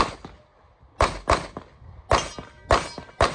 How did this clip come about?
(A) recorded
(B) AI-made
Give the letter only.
A